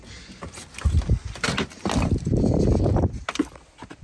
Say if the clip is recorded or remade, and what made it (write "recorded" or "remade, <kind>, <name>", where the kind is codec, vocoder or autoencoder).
recorded